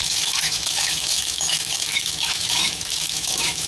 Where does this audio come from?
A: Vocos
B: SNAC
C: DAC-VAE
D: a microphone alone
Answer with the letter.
C